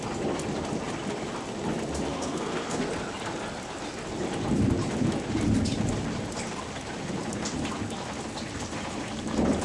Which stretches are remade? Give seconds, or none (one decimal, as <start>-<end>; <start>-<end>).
2.1-2.9